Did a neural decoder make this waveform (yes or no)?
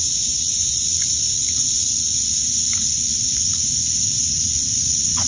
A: yes